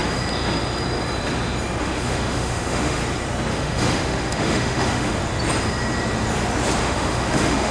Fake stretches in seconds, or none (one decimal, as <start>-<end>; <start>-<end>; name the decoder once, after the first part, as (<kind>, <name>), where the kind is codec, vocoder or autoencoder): 1.8-3.0 (autoencoder, DAC-VAE); 3.5-5.2; 6.8-7.7